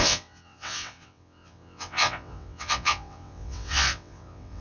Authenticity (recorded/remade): remade